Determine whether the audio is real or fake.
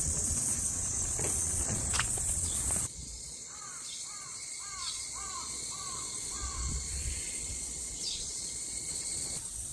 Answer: fake